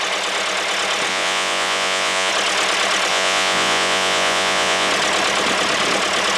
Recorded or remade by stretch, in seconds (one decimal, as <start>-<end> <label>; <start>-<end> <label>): 0.0-1.1 recorded; 1.1-2.3 remade; 2.3-3.1 recorded; 3.1-4.9 remade; 4.9-6.4 recorded